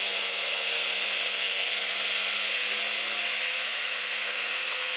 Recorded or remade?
remade